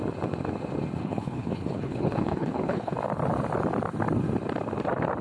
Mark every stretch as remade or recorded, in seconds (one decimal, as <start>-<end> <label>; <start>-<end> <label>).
0.0-1.0 recorded; 1.0-2.9 remade; 2.9-5.2 recorded